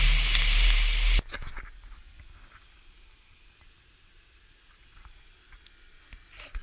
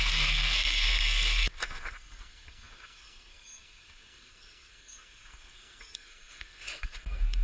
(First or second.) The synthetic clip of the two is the second